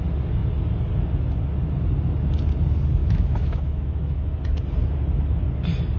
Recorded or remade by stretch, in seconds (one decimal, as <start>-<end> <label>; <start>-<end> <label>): 0.0-3.0 recorded; 3.0-4.3 remade; 4.3-6.0 recorded